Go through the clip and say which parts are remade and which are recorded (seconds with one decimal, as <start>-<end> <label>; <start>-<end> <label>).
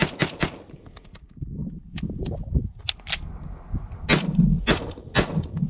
0.0-5.7 recorded